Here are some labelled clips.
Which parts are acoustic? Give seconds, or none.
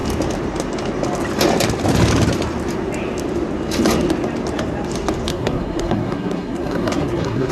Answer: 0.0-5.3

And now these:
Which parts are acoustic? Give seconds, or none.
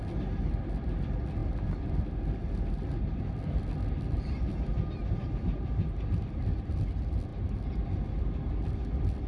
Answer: 0.0-9.3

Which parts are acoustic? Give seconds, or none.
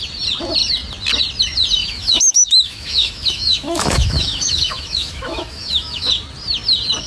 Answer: 0.0-1.8; 6.1-7.1